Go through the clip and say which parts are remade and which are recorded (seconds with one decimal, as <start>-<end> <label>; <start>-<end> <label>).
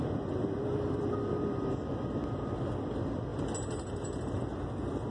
0.0-5.1 recorded